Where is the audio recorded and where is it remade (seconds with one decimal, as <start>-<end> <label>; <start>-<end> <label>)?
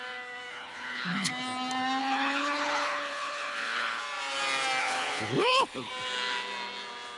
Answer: 0.0-0.5 recorded; 0.5-1.3 remade; 1.3-2.0 recorded; 2.0-4.0 remade; 4.0-4.8 recorded; 4.8-5.9 remade; 5.9-7.2 recorded